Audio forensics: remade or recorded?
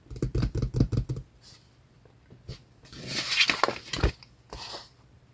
recorded